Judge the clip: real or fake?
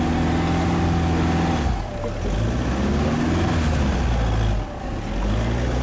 real